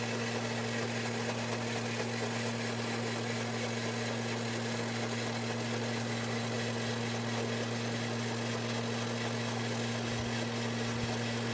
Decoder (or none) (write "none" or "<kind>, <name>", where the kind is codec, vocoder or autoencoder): none